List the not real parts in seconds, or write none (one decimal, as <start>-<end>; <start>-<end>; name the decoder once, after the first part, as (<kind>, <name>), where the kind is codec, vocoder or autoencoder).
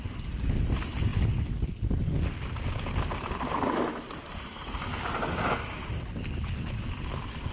none